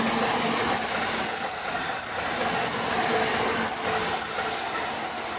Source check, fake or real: real